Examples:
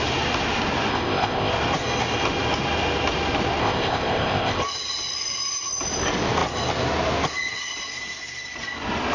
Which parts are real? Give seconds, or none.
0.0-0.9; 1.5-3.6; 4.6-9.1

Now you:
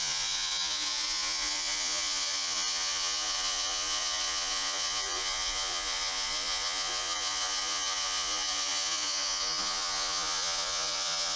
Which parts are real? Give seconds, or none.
none

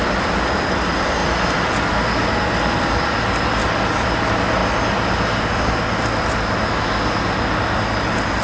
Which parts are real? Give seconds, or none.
0.0-8.4

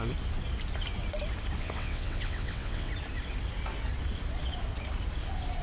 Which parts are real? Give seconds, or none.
0.0-1.6; 2.9-5.6

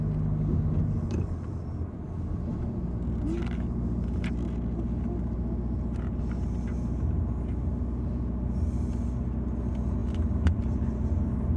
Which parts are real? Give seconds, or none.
0.0-10.0; 10.6-11.6

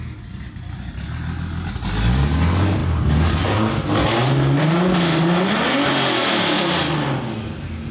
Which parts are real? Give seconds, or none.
0.0-7.9

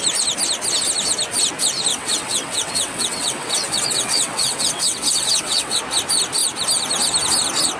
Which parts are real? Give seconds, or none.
0.0-1.9; 5.8-7.8